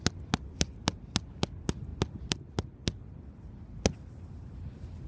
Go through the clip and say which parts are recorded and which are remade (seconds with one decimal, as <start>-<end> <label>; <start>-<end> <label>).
0.0-5.1 recorded